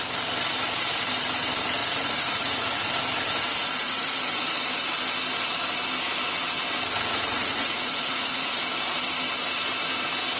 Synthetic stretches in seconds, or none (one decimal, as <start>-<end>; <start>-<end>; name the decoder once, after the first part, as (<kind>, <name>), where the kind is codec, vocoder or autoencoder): 1.8-2.9 (vocoder, Vocos); 3.5-4.2; 7.1-8.6